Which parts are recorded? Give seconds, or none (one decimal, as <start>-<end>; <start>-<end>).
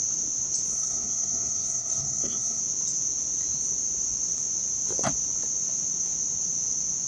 0.0-0.7; 2.6-7.1